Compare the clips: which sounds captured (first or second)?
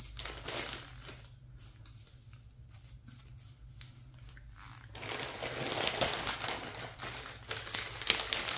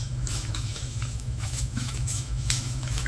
first